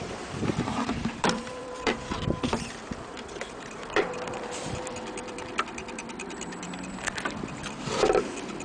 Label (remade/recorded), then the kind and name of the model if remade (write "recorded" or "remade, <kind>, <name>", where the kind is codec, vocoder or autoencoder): remade, vocoder, BigVGAN v2